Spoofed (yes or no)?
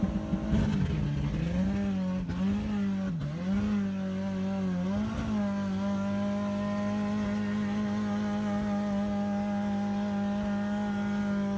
no